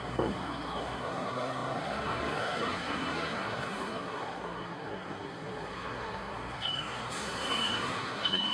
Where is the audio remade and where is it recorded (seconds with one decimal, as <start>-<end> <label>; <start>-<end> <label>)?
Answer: 0.0-8.5 remade